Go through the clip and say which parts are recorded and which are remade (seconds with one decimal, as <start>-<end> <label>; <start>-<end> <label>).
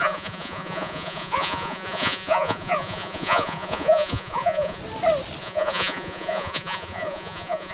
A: 0.0-4.8 remade; 4.8-5.4 recorded; 5.4-7.7 remade